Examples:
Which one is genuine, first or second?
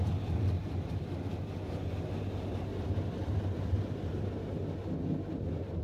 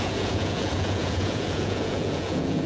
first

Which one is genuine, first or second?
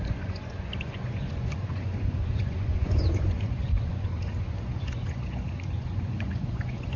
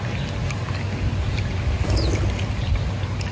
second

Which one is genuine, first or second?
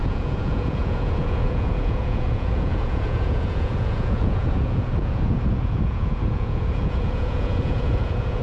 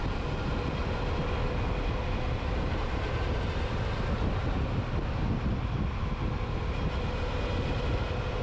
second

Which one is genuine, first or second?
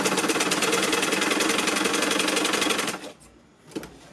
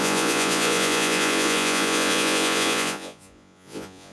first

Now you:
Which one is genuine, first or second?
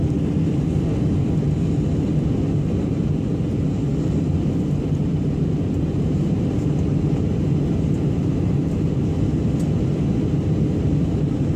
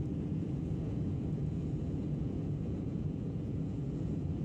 first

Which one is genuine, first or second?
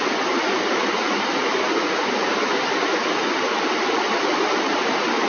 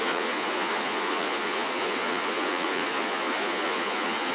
first